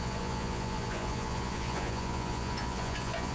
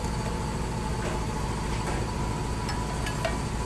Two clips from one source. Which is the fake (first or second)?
first